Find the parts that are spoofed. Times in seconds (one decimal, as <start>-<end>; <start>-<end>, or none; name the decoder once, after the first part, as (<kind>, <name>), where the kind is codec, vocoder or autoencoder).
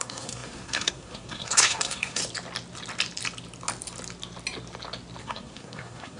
0.0-2.2 (codec, SNAC); 5.2-6.2